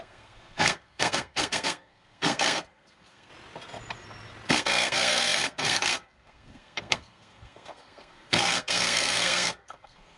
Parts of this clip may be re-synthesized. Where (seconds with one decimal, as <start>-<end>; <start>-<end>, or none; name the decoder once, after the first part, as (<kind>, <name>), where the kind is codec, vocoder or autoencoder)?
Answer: 0.0-3.3 (codec, SNAC); 4.5-10.2